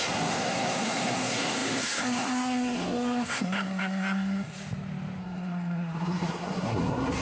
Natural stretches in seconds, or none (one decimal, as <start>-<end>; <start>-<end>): 4.5-5.2